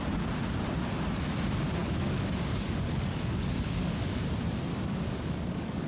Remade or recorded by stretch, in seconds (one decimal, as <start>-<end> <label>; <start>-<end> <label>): 0.0-1.8 recorded; 1.8-4.2 remade; 4.2-4.7 recorded; 4.7-5.9 remade